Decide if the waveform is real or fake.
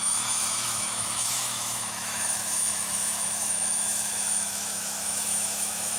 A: fake